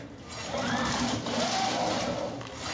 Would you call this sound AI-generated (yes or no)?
no